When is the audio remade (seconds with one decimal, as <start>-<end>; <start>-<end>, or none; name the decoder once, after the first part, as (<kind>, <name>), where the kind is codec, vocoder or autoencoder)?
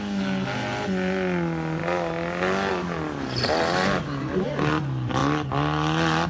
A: none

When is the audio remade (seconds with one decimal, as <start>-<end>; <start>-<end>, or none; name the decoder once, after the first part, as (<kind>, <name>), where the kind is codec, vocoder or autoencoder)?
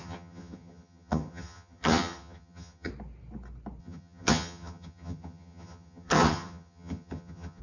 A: 0.0-2.9 (vocoder, HiFi-GAN); 3.8-7.6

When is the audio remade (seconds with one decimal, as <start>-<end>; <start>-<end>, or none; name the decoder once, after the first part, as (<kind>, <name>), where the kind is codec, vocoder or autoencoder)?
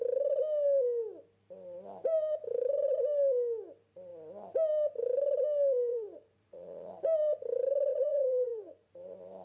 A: 5.9-6.9 (vocoder, Vocos); 7.9-8.9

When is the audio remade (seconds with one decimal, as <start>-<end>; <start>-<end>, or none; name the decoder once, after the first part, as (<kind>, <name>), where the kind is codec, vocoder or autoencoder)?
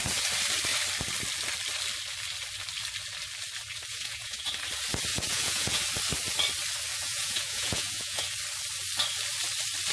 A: 3.9-4.5 (vocoder, Vocos); 5.1-5.8; 6.9-8.2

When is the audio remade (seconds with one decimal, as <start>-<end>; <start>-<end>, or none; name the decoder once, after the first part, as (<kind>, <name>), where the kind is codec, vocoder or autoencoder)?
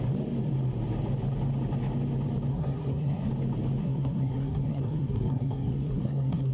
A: 2.5-3.3 (codec, SNAC); 3.8-6.5